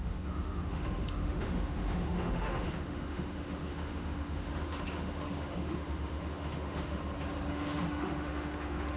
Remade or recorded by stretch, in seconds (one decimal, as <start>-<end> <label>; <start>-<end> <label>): 0.0-7.0 remade; 7.0-7.5 recorded; 7.5-9.0 remade